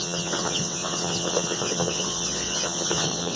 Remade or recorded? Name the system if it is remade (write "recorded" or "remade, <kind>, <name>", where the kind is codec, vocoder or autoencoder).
remade, vocoder, WaveNeXt